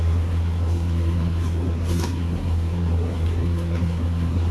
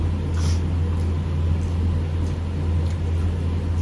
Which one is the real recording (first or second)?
second